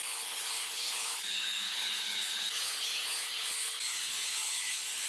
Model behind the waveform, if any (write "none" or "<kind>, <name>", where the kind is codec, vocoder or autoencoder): codec, HILCodec